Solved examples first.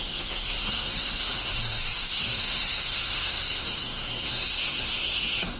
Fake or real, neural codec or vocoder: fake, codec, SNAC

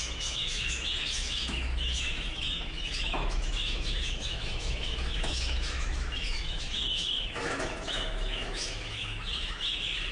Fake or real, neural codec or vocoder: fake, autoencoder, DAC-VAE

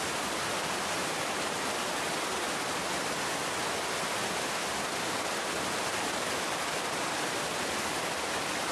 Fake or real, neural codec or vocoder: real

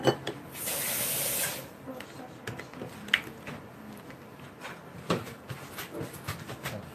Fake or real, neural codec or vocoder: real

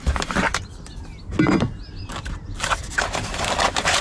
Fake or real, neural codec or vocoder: real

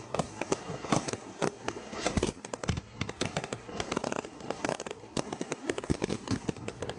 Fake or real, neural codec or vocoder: fake, codec, SNAC